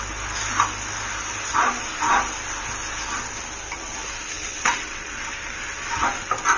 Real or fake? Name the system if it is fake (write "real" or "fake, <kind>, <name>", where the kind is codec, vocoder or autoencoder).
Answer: real